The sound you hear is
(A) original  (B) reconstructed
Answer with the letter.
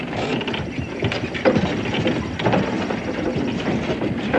A